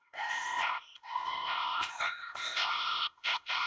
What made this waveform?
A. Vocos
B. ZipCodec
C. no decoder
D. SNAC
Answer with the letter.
B